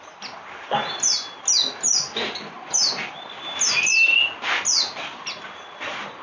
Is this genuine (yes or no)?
yes